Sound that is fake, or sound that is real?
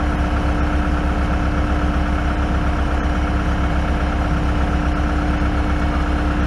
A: real